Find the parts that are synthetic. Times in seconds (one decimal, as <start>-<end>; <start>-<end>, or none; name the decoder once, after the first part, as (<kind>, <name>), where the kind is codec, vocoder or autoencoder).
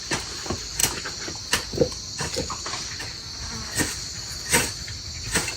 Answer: none